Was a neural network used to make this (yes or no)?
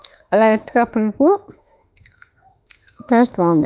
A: yes